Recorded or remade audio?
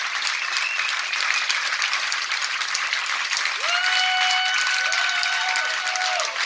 recorded